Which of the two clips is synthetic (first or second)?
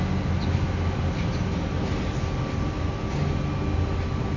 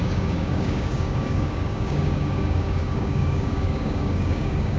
second